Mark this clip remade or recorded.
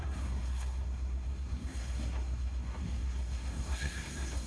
remade